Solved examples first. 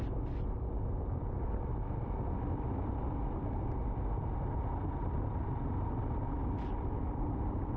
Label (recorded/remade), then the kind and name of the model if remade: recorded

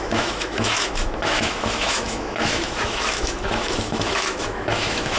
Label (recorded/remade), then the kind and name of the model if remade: remade, autoencoder, DAC-VAE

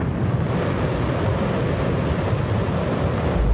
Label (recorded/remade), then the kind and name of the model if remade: recorded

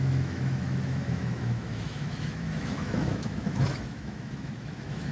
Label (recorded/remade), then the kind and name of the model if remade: remade, autoencoder, DAC-VAE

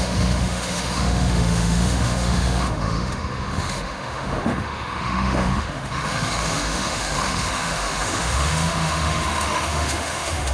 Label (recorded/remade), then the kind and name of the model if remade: remade, autoencoder, DAC-VAE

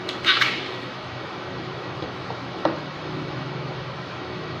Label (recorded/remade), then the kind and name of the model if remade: remade, autoencoder, DAC-VAE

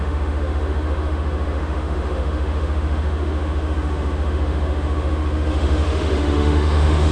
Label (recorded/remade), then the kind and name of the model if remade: remade, autoencoder, DAC-VAE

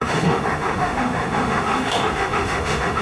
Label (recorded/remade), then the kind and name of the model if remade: remade, autoencoder, DAC-VAE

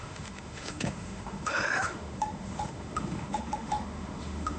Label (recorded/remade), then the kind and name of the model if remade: remade, autoencoder, DAC-VAE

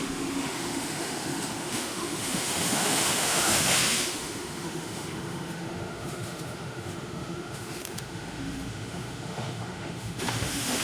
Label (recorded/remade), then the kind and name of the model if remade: remade, autoencoder, DAC-VAE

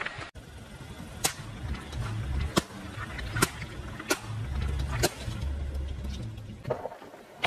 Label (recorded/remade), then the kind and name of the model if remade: recorded